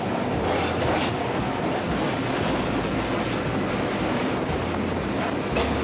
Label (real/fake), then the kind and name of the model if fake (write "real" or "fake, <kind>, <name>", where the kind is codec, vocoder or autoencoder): real